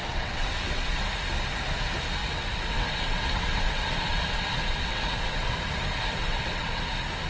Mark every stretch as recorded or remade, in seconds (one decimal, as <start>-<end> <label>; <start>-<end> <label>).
0.0-1.0 remade; 1.0-2.2 recorded; 2.2-5.6 remade; 5.6-6.2 recorded; 6.2-6.8 remade; 6.8-7.3 recorded